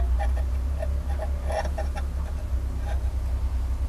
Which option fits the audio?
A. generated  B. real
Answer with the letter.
B